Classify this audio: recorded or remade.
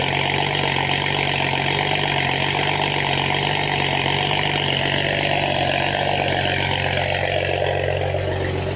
recorded